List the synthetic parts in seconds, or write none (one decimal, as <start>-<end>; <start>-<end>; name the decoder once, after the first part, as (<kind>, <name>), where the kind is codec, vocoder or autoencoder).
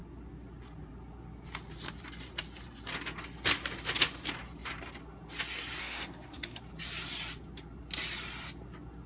5.8-6.6 (codec, SNAC)